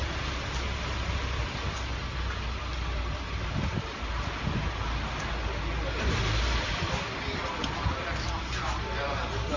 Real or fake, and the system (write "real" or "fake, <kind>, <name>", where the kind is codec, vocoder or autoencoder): real